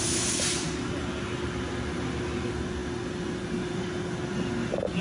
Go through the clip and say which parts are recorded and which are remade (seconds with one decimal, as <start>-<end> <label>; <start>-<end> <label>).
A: 0.0-5.0 recorded